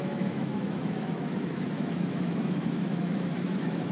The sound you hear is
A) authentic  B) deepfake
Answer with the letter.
B